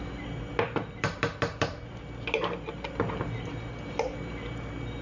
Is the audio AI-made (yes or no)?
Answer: no